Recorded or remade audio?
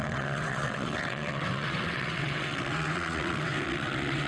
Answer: remade